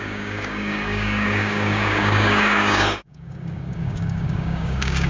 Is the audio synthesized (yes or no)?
yes